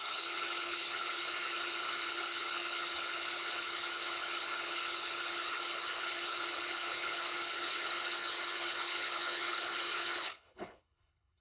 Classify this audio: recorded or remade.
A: remade